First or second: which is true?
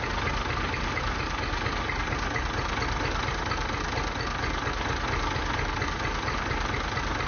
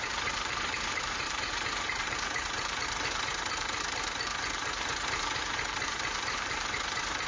first